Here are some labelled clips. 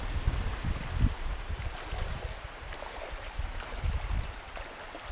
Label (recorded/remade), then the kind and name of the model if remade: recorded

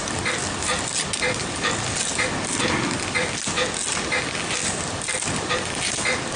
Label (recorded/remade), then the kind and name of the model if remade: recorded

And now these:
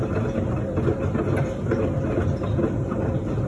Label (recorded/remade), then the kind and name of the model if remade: recorded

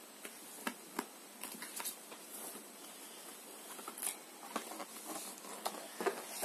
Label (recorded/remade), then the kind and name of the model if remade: recorded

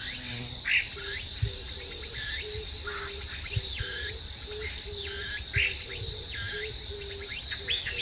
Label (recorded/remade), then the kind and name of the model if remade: recorded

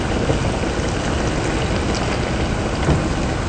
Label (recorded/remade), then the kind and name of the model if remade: recorded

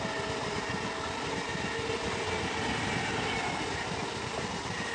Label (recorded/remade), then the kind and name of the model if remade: recorded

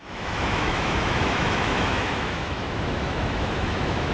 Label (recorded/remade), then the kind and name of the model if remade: remade, autoencoder, DAC-VAE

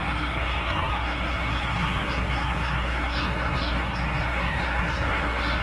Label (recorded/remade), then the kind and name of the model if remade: remade, codec, SNAC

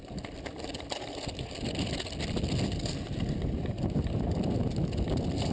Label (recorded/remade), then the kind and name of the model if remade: recorded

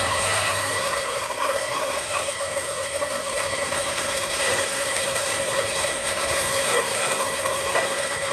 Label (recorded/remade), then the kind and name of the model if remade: remade, codec, SNAC